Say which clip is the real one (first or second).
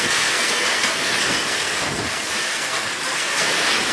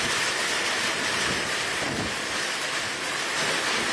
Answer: second